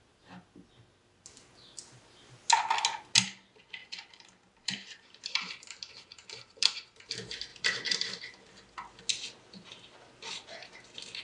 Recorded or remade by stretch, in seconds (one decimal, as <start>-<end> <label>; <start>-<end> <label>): 0.0-3.8 recorded; 3.8-7.1 remade; 7.1-11.2 recorded